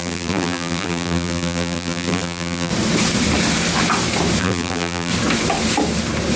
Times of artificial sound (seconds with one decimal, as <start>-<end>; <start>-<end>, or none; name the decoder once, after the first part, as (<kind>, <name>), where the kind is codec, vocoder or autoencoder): 0.0-2.7 (vocoder, BigVGAN v2); 4.4-5.1